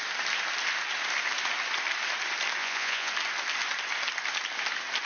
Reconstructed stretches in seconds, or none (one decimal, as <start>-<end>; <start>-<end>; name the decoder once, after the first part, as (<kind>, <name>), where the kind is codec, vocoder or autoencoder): 2.6-3.1 (vocoder, Vocos)

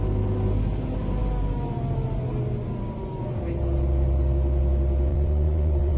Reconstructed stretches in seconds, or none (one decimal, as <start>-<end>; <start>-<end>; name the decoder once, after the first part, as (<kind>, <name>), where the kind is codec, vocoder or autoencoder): 5.1-6.0 (vocoder, WaveNeXt)

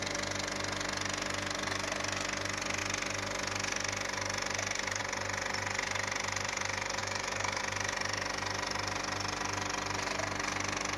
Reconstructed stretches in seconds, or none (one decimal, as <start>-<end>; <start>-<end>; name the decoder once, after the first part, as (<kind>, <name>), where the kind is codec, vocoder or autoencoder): 7.0-7.6 (autoencoder, DAC-VAE)

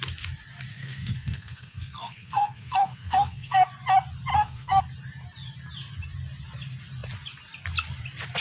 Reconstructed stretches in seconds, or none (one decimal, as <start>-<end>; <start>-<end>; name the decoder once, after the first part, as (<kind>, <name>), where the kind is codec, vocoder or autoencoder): 0.7-3.7 (codec, SNAC); 4.3-4.8

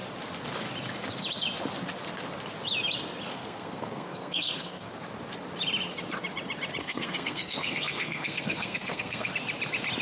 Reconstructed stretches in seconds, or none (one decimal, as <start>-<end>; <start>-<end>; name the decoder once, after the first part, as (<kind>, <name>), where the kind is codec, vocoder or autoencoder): 3.3-4.9 (codec, SNAC); 6.8-9.3

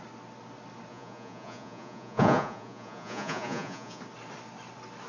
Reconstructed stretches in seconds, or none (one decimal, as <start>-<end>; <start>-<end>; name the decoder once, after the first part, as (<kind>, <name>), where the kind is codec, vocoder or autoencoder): 0.9-4.0 (vocoder, Vocos)

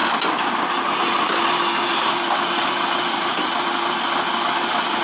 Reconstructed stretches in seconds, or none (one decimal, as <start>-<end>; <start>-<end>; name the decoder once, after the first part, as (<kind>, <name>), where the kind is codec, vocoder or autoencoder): none

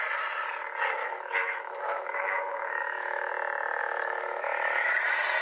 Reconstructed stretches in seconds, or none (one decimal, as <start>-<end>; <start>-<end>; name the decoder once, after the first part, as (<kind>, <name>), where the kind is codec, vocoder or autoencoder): 1.0-3.3 (autoencoder, DAC-VAE); 3.8-4.9